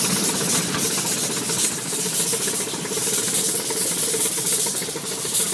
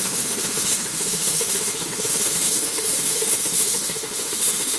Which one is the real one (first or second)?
first